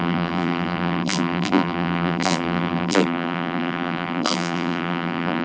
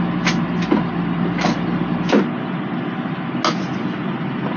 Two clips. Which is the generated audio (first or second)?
first